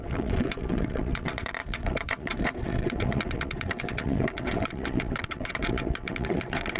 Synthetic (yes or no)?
yes